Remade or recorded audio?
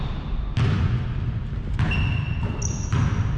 recorded